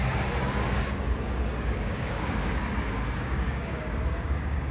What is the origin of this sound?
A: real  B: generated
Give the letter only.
B